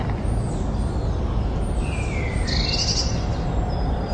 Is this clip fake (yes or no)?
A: no